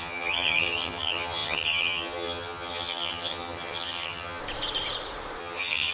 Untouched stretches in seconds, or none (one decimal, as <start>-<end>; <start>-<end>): 4.4-5.4